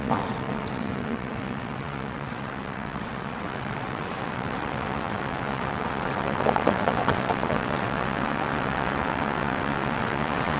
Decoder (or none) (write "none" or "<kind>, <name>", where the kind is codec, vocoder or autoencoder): vocoder, WaveNeXt